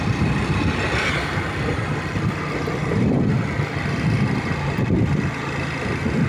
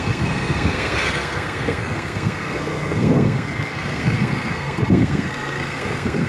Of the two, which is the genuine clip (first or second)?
first